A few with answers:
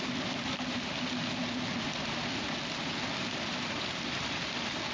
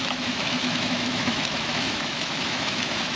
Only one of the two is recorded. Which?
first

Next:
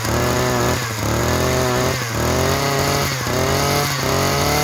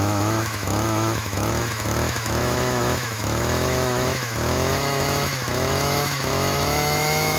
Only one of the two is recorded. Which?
first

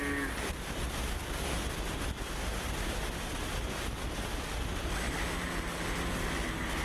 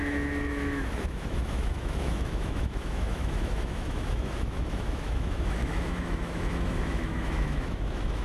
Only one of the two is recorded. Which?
first